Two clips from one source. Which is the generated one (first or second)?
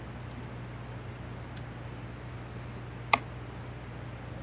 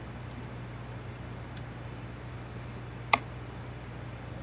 second